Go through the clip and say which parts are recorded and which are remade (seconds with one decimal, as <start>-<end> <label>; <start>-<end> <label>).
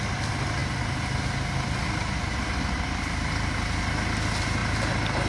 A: 0.0-5.3 recorded